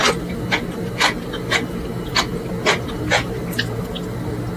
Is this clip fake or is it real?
real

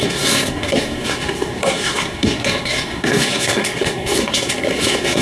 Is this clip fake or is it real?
fake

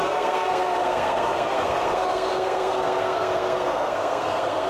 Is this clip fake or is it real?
fake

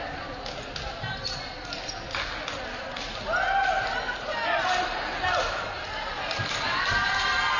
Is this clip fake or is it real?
real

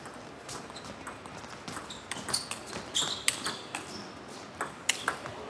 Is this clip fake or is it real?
real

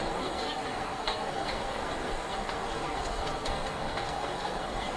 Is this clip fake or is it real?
fake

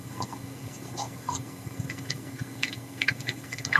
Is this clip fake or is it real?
fake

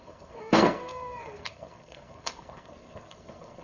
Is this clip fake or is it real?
fake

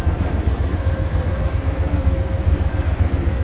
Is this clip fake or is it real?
fake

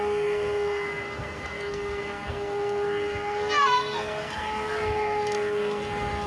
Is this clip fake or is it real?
fake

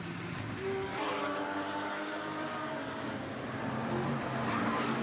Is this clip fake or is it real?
real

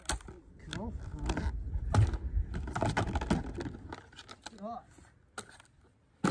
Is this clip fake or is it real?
real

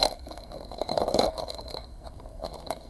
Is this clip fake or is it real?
fake